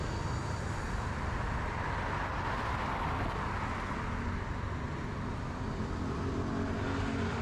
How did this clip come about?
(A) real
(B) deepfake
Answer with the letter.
A